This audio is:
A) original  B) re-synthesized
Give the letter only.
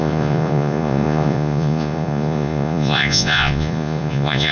B